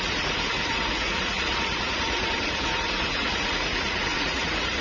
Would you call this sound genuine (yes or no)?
no